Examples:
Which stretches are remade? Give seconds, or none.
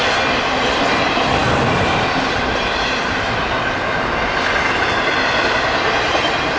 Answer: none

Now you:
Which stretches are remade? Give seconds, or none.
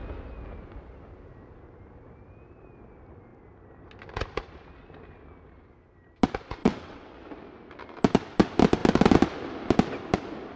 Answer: 6.6-7.2 (vocoder, WaveNeXt)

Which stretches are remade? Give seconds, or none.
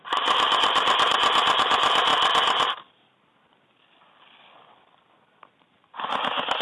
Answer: 2.1-6.1 (vocoder, BigVGAN v2)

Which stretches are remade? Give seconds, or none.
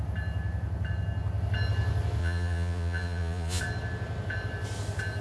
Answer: 2.2-3.6 (vocoder, Vocos)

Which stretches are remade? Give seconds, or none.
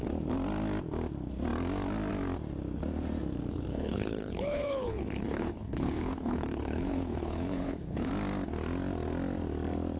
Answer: 3.7-8.1 (codec, HILCodec)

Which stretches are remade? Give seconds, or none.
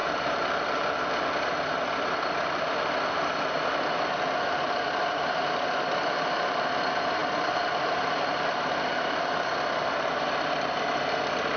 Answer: none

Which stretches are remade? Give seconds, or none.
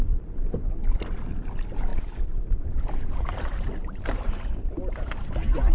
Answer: 1.9-4.8 (vocoder, BigVGAN v2)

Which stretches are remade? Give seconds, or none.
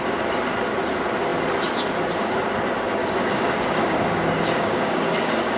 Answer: 3.0-5.6 (codec, DAC)